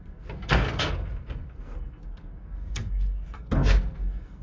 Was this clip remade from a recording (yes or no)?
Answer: yes